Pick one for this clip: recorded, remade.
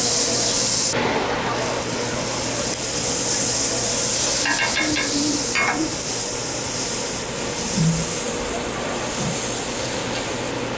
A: recorded